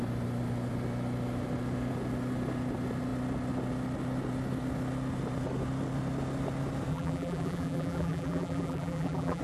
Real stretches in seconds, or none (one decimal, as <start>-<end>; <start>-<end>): 0.0-6.9